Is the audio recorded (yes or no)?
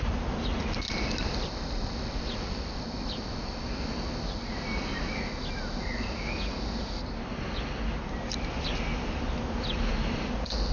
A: yes